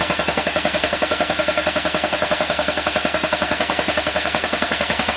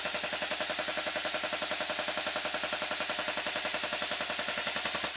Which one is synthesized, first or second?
first